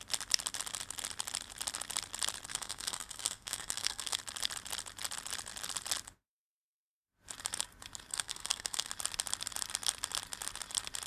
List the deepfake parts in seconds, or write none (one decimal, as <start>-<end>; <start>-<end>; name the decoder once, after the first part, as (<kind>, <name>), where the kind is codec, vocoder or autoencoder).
2.5-4.2 (codec, SNAC); 8.1-8.9